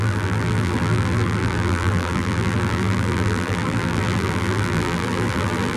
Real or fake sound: fake